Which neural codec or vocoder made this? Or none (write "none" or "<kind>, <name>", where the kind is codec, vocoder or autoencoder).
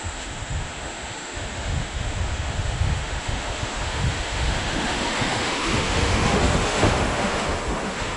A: autoencoder, DAC-VAE